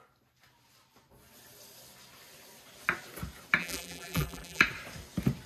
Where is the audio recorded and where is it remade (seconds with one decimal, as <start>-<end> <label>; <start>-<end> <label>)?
0.0-3.6 recorded; 3.6-4.6 remade; 4.6-5.5 recorded